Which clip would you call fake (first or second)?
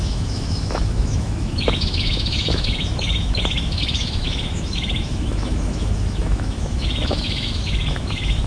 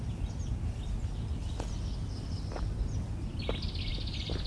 first